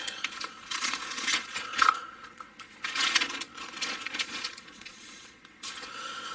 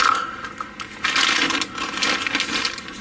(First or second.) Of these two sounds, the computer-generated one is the first